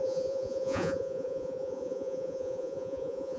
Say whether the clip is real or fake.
fake